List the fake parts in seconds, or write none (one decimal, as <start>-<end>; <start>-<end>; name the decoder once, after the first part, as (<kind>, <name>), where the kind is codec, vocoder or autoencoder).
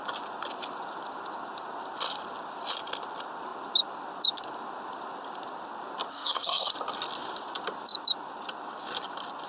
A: 6.1-6.7 (codec, SNAC)